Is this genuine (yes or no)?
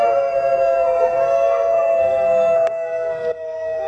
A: no